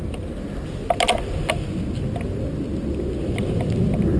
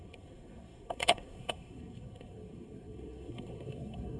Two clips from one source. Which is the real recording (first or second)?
first